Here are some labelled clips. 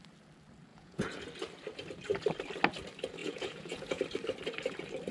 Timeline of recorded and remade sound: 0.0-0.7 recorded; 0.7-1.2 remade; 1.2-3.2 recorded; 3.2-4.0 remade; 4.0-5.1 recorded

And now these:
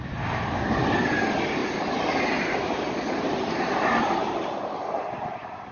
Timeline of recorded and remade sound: 0.0-5.7 recorded

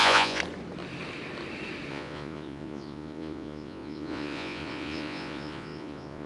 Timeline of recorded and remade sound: 0.0-0.4 remade; 0.4-1.9 recorded; 1.9-6.3 remade

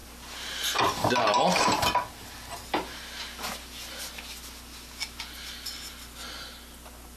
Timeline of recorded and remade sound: 0.0-7.2 recorded

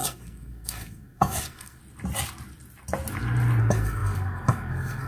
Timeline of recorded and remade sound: 0.0-1.8 remade; 1.8-3.6 recorded; 3.6-5.1 remade

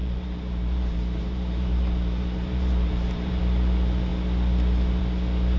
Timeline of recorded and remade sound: 0.0-3.4 remade; 3.4-5.6 recorded

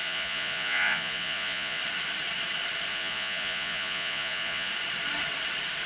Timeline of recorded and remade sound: 0.0-1.8 remade; 1.8-2.9 recorded; 2.9-4.7 remade; 4.7-5.9 recorded

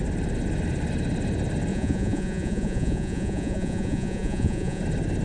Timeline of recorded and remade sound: 0.0-1.7 recorded; 1.7-4.8 remade; 4.8-5.2 recorded